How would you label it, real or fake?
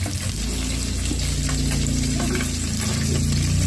real